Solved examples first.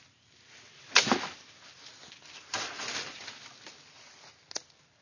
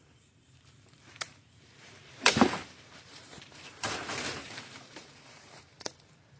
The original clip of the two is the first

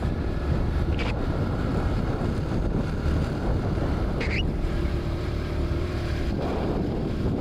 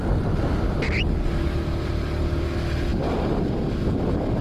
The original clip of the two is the second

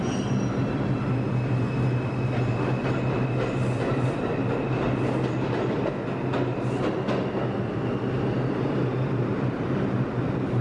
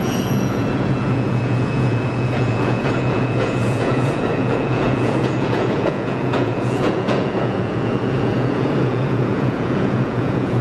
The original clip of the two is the first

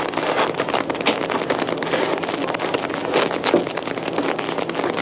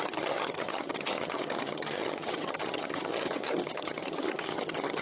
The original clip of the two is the first